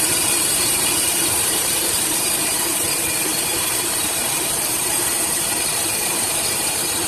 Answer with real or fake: fake